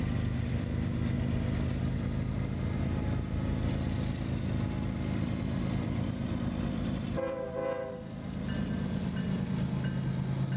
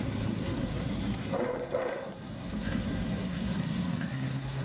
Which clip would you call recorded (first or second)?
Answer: first